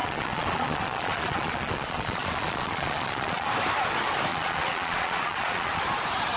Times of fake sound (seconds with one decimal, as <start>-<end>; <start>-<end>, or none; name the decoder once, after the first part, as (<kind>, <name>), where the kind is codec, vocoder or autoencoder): 0.0-3.5 (vocoder, Vocos); 4.3-5.8

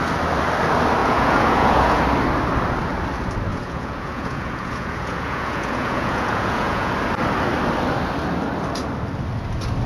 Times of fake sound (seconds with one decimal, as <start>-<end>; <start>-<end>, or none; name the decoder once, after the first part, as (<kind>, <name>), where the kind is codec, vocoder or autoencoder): 1.0-2.0 (vocoder, Vocos); 3.5-6.9

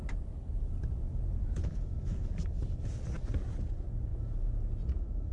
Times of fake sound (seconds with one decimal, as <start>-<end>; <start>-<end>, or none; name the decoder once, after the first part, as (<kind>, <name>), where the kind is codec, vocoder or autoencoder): 1.1-2.3 (vocoder, Vocos)

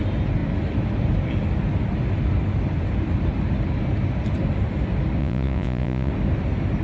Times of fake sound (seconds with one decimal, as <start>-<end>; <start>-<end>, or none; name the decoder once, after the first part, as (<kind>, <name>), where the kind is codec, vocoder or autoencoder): 5.2-6.1 (vocoder, Vocos)

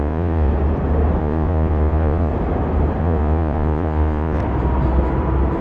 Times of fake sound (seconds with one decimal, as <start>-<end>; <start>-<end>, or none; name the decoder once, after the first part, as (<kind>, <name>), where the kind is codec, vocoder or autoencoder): 0.0-0.5 (vocoder, Vocos); 1.2-2.3; 3.0-4.4

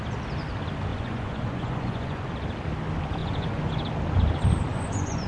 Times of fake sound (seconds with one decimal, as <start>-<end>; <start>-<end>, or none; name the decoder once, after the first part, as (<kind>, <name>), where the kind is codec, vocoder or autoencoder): 0.9-2.3 (vocoder, Vocos); 3.2-3.7; 4.7-5.3

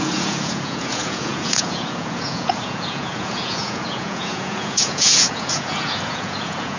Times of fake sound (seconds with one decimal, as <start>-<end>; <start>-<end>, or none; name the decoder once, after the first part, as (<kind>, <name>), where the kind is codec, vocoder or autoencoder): 0.0-6.8 (vocoder, Vocos)

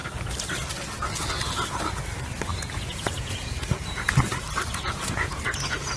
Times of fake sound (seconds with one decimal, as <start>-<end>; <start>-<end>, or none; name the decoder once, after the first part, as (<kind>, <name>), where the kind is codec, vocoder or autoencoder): 2.5-4.1 (vocoder, Vocos); 4.7-5.4